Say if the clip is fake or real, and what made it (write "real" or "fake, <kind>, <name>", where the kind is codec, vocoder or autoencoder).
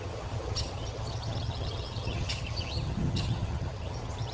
fake, vocoder, HiFi-GAN